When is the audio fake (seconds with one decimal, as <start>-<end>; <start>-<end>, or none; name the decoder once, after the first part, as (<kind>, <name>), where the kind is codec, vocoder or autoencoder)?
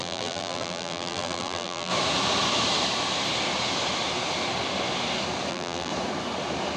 0.0-1.9 (vocoder, BigVGAN v2); 5.5-5.9